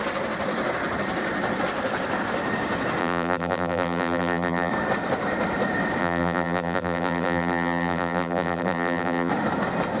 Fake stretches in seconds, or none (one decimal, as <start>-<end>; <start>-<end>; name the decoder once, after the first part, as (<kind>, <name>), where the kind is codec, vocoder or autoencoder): 3.0-4.7 (vocoder, BigVGAN v2); 6.0-9.3